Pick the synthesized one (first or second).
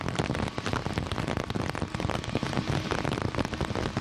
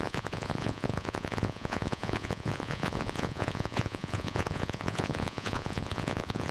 second